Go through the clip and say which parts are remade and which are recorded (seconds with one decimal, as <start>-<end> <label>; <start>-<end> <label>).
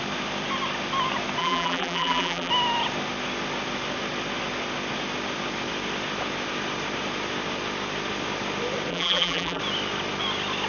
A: 0.0-1.4 recorded; 1.4-2.5 remade; 2.5-8.9 recorded; 8.9-9.6 remade; 9.6-10.7 recorded